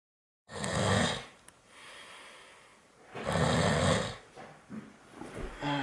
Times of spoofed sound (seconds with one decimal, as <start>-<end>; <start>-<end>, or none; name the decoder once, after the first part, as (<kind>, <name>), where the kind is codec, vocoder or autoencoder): 0.0-1.0 (codec, SNAC)